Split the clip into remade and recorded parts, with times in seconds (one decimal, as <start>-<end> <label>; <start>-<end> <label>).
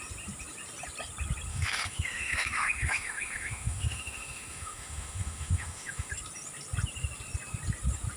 0.0-1.5 recorded; 1.5-6.1 remade; 6.1-8.2 recorded